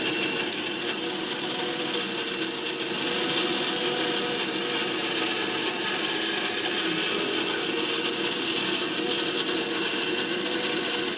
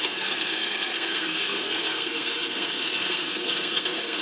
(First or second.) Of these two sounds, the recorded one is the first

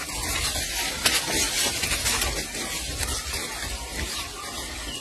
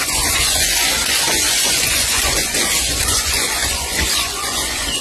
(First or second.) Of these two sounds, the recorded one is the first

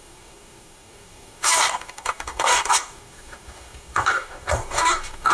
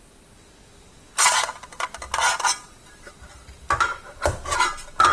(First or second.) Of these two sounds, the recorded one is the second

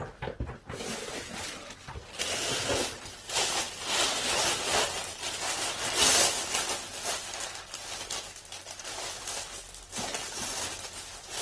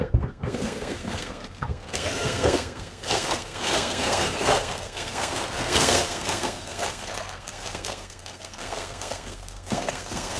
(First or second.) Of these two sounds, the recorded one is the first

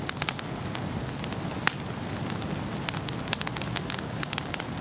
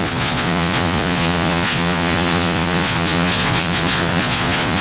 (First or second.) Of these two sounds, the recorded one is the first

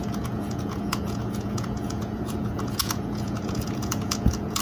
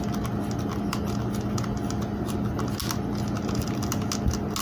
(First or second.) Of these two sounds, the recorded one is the second